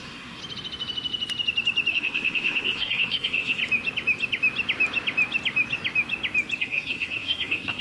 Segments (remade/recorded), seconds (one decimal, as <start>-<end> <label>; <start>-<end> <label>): 0.0-0.4 remade; 0.4-1.9 recorded; 1.9-3.6 remade; 3.6-6.6 recorded; 6.6-7.8 remade